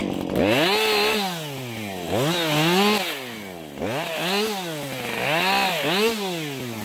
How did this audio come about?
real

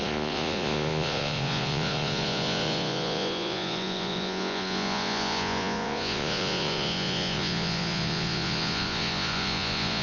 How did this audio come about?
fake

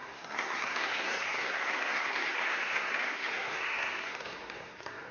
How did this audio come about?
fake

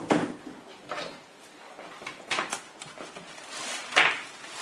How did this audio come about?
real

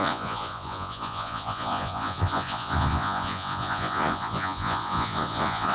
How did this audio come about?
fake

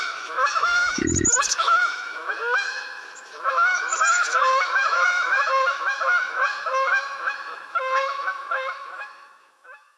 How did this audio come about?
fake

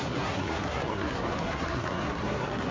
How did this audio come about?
fake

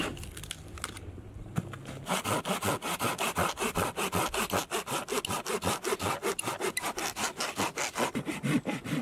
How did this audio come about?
real